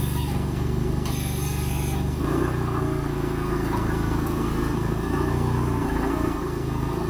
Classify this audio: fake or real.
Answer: fake